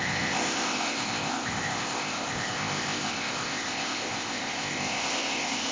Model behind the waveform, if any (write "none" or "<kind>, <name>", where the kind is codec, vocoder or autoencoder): codec, ZipCodec